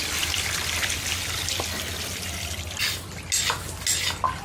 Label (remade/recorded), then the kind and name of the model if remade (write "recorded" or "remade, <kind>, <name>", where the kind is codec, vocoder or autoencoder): recorded